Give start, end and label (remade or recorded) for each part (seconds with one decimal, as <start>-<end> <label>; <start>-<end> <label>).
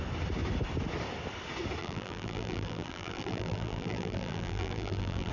0.0-1.8 recorded; 1.8-5.3 remade